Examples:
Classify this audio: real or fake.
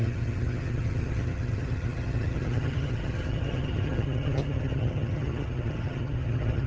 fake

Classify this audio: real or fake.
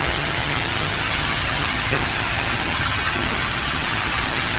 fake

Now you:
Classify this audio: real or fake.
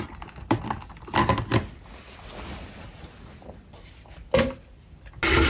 real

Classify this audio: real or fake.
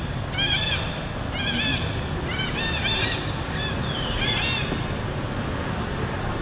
real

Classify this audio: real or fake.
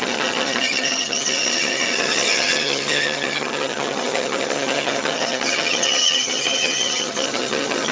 fake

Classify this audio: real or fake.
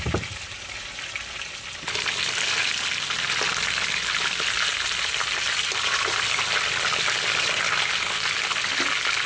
real